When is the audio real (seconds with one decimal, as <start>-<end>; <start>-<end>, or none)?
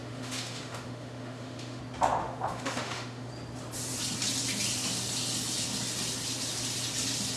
1.8-2.2; 3.3-7.4